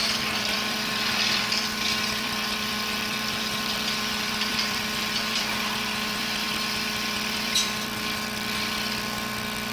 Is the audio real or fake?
fake